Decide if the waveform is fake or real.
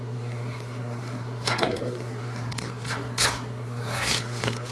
fake